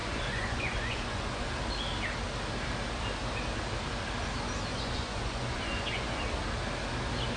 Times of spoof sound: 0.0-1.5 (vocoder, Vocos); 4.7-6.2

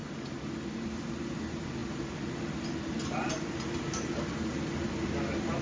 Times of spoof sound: none

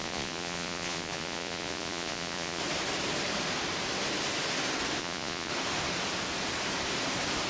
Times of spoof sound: 0.0-2.6 (vocoder, Vocos); 5.0-5.5

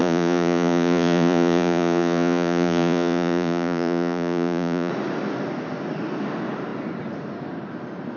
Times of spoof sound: 0.0-4.9 (vocoder, Vocos)